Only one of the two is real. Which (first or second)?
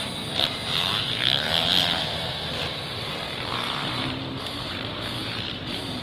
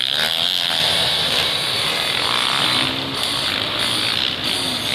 second